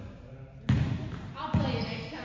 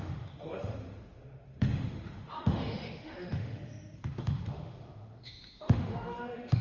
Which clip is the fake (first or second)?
second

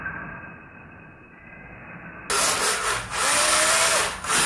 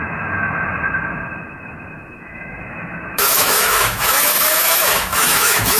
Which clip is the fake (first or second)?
second